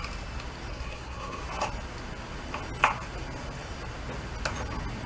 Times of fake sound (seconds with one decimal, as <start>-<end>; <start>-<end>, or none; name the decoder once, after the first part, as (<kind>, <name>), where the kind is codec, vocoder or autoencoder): 0.7-1.4 (codec, SNAC)